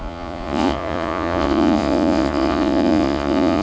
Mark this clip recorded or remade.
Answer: remade